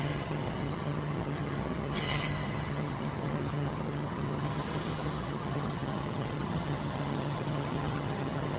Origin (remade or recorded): remade